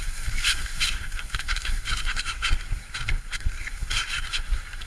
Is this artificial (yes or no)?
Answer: yes